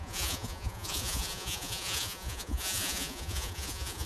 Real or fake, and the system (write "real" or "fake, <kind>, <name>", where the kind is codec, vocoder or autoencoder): fake, vocoder, Vocos